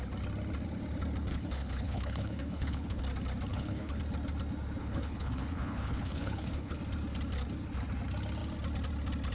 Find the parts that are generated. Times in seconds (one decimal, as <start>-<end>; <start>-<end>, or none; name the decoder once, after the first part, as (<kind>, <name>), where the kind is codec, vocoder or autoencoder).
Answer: 1.3-3.0 (codec, HILCodec); 3.5-4.0; 4.8-6.8